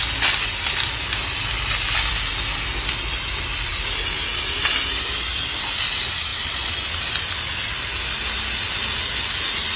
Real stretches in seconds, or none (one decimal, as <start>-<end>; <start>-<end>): 0.0-9.8